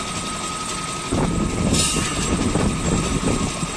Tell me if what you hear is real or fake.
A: real